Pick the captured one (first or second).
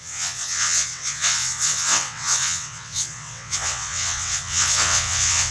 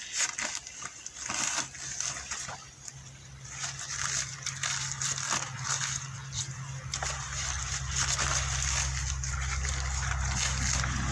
second